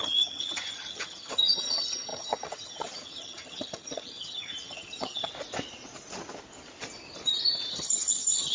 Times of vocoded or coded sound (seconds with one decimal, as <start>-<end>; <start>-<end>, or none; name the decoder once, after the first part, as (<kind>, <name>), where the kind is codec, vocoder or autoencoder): 0.0-5.3 (vocoder, HiFi-GAN); 7.7-8.5